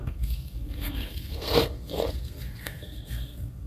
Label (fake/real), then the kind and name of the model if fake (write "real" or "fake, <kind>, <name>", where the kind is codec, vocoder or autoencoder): fake, codec, SNAC